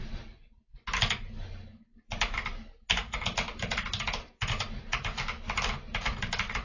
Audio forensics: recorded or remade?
recorded